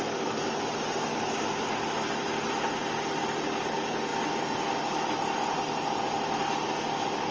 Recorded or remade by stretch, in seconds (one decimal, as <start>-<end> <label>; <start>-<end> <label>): 0.0-7.3 recorded